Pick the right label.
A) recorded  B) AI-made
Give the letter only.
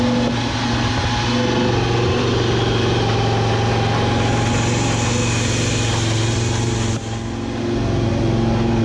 A